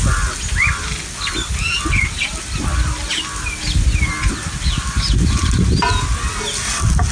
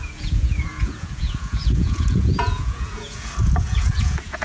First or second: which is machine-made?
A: second